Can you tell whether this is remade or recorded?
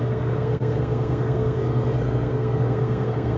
remade